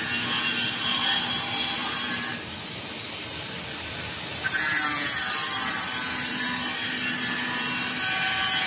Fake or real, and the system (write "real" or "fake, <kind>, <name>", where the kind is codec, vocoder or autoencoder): real